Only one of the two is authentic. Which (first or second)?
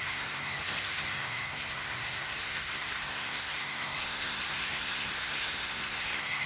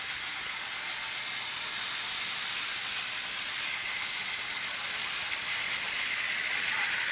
second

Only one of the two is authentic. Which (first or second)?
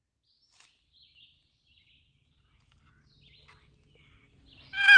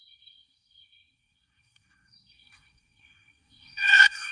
first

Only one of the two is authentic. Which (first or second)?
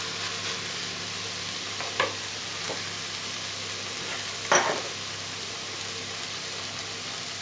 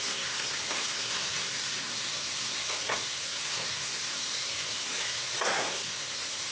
first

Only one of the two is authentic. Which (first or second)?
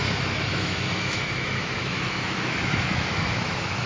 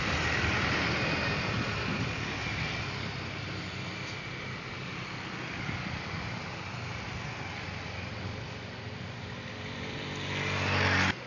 second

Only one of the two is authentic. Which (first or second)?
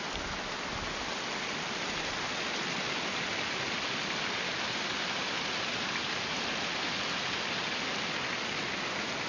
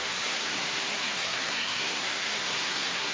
first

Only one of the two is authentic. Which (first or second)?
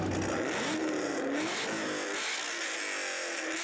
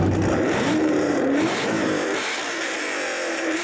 first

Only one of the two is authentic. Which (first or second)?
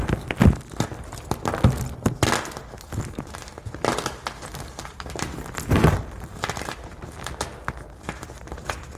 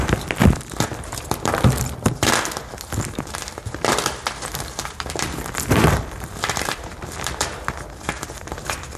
first